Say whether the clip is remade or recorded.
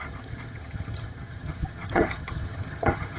remade